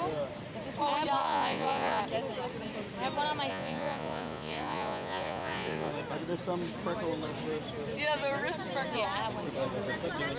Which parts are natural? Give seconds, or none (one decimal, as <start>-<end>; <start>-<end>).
0.0-1.2; 2.0-3.5; 5.9-10.4